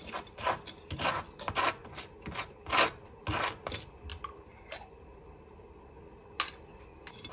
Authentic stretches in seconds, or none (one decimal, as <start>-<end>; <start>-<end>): 0.0-1.8; 3.2-4.1; 5.9-7.3